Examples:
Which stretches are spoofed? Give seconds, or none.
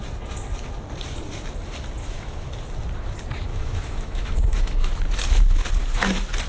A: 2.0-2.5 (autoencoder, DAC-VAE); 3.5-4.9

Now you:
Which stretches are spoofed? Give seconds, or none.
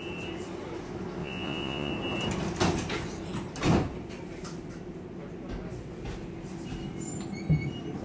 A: 1.2-1.9 (vocoder, Vocos)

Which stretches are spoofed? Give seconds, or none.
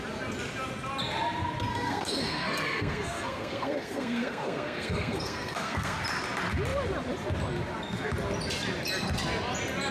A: 1.7-6.0 (codec, SNAC)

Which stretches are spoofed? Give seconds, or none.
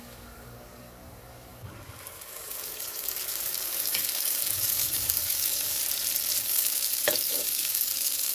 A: 0.0-5.8 (codec, DAC); 6.4-8.3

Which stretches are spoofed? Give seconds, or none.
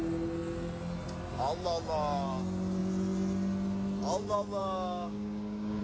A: 4.6-5.8 (codec, DAC)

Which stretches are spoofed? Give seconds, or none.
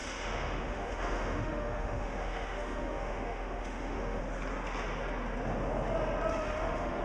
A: 0.0-4.2 (autoencoder, DAC-VAE); 6.3-7.0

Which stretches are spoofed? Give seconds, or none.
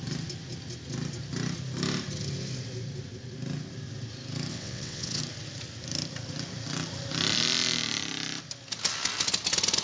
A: 4.5-5.2 (vocoder, WaveNeXt)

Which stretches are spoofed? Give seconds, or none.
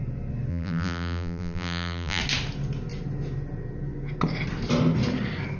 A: 0.5-2.2 (vocoder, BigVGAN v2)